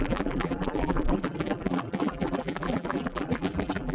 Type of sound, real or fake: fake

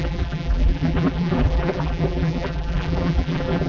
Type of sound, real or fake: fake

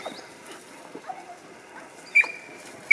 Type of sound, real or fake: real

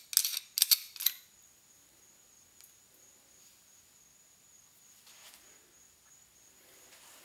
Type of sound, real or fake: real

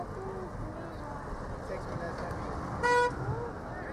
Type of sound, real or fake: real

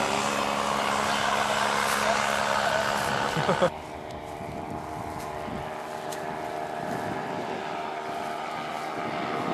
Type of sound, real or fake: real